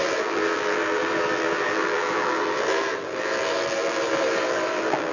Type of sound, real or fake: fake